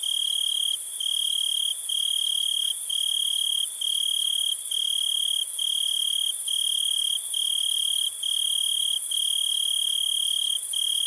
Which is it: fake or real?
real